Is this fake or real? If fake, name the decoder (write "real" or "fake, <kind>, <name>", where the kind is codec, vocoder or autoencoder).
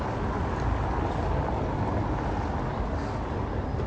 real